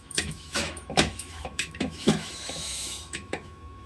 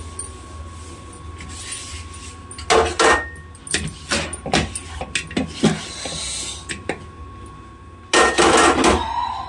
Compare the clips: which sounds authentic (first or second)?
second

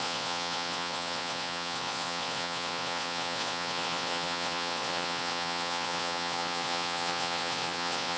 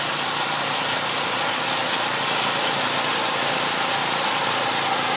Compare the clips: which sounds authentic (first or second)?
second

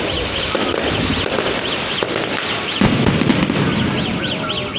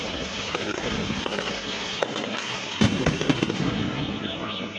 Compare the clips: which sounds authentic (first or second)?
first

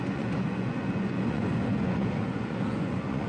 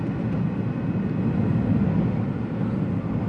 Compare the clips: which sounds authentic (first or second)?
second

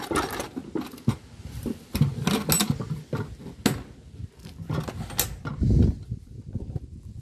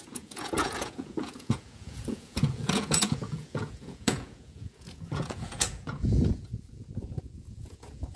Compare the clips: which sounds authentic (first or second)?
first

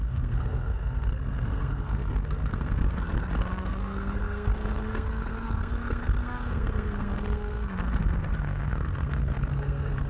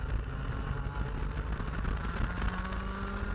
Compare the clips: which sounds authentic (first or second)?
second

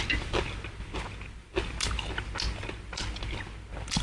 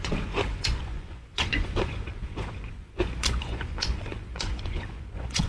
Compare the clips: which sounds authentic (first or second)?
first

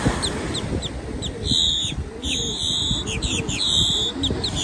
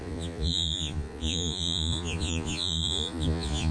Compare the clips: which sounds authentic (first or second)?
first